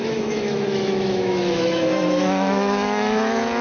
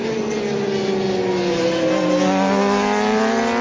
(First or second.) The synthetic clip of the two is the first